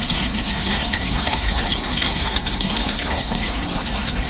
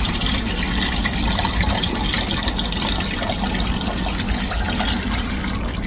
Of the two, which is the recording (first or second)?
second